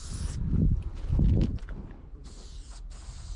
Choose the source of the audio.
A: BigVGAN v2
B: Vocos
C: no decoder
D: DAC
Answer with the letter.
A